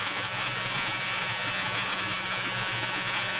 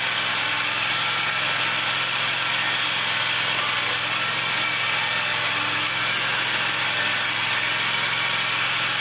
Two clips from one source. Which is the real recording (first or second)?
second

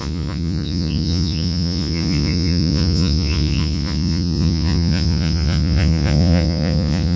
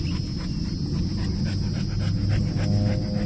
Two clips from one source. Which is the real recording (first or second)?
second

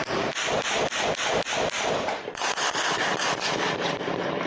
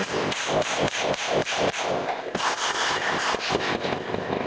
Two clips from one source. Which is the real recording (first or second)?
first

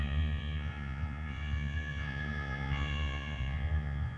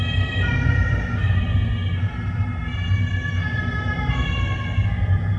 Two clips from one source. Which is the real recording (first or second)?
second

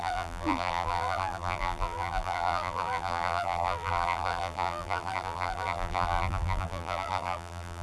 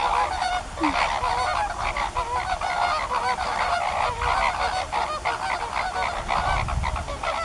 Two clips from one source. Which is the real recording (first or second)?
second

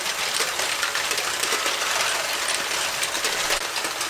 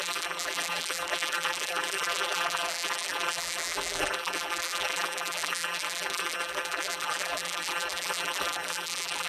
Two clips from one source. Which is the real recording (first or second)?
first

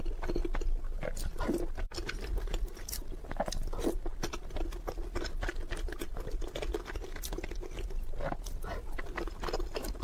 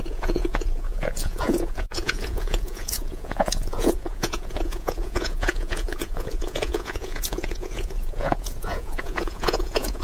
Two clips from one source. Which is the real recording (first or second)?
first